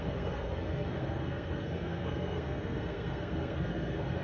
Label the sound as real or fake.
fake